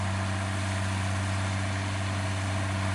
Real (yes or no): yes